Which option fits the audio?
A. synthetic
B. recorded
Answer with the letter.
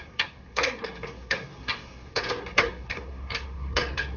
A